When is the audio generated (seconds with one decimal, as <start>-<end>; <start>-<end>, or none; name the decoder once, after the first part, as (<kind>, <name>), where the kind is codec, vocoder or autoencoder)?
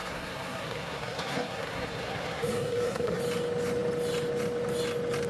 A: 0.0-3.2 (codec, SNAC)